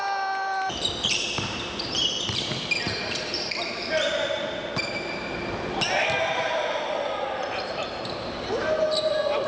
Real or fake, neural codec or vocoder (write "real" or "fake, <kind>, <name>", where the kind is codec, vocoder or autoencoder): fake, vocoder, BigVGAN v2